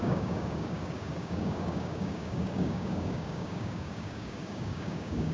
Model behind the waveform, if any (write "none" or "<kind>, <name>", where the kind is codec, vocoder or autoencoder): codec, DAC